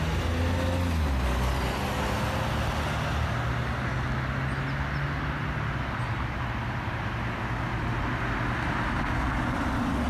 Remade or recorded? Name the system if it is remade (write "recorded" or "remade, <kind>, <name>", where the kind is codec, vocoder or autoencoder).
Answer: recorded